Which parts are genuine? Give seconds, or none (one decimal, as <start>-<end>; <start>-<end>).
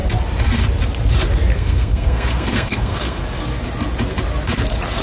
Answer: 0.0-1.5; 3.2-5.0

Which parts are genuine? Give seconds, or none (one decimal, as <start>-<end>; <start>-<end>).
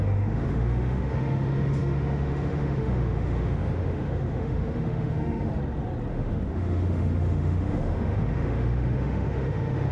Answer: 5.5-6.1